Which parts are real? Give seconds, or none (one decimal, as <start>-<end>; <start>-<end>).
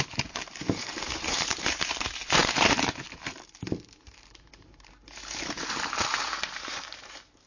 none